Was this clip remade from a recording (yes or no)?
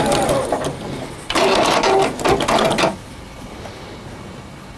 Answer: no